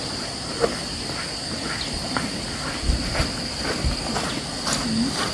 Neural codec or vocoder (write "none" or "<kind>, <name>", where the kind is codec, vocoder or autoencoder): none